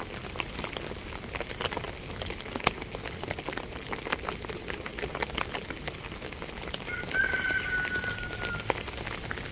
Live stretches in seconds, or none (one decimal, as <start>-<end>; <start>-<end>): 0.0-9.5